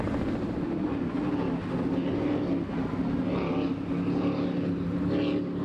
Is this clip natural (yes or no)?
yes